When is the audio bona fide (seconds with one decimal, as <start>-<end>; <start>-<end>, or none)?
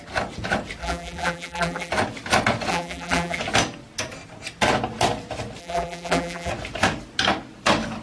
0.0-0.8; 1.9-2.7; 3.4-5.6; 6.5-8.0